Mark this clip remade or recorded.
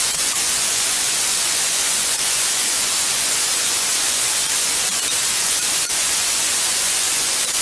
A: remade